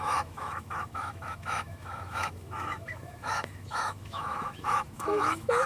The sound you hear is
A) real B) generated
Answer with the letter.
B